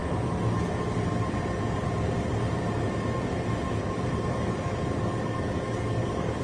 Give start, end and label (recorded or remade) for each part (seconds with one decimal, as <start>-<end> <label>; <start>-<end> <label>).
0.0-3.8 recorded; 3.8-6.4 remade